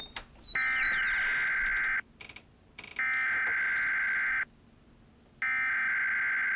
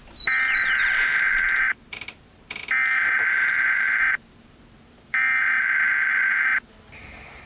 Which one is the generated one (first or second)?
second